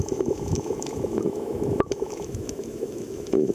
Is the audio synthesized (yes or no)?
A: yes